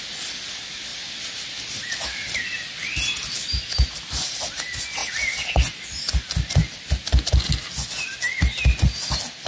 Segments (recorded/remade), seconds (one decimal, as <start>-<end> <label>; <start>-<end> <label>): 0.0-9.5 recorded